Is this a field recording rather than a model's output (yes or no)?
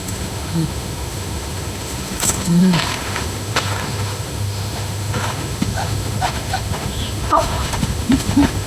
no